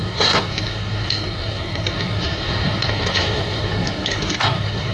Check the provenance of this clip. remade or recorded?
remade